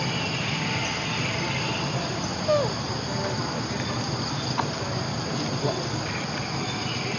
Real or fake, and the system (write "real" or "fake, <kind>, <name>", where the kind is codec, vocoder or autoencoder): real